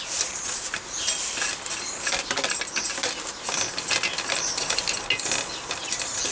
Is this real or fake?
real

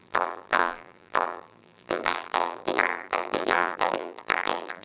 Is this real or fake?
fake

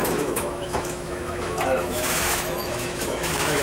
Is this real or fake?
fake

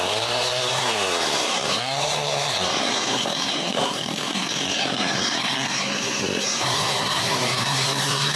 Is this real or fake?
fake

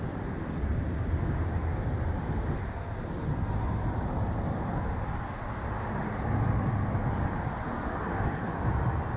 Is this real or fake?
real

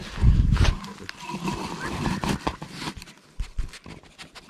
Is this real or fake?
real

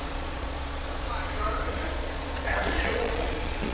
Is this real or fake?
fake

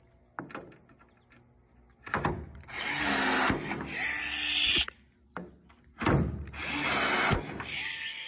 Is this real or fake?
real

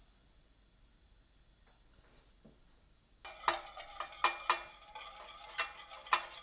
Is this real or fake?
real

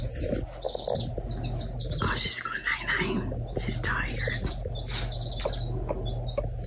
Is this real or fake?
real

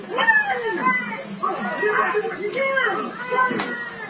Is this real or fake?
real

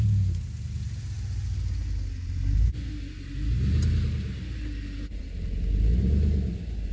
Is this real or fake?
real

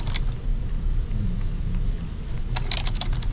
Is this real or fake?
real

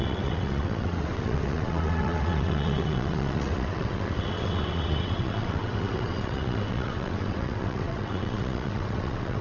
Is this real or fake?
fake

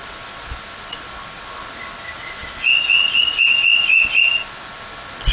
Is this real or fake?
real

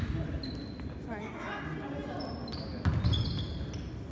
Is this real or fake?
real